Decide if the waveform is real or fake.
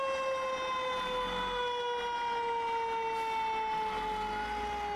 real